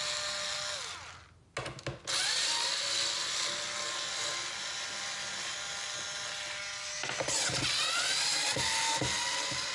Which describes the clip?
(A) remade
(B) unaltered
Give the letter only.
B